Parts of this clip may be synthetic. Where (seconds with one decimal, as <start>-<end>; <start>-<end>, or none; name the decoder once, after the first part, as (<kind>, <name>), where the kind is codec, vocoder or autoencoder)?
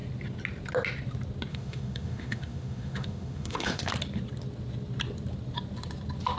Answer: 1.5-3.9 (autoencoder, DAC-VAE)